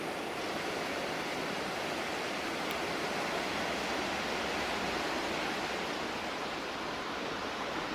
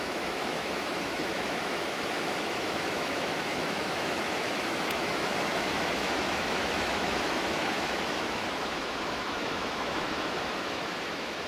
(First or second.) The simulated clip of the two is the second